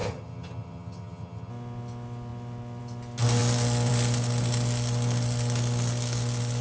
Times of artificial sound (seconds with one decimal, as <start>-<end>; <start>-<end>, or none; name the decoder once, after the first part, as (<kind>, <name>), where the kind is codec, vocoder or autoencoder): 0.0-1.5 (vocoder, HiFi-GAN)